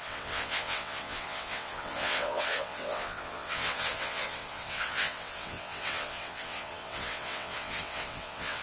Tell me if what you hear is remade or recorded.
remade